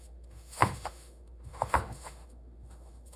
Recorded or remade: remade